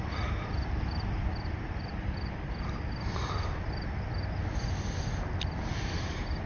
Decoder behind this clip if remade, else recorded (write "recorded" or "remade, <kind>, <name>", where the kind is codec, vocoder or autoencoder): recorded